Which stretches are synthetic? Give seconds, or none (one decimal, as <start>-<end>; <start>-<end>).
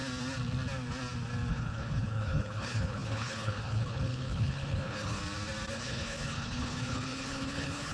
1.5-5.2; 5.7-7.9